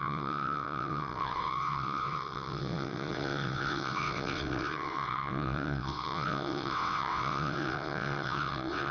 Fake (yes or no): yes